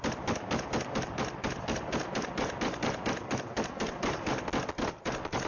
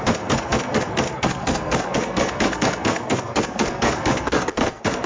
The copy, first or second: second